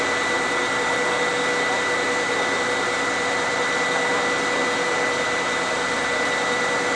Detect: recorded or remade recorded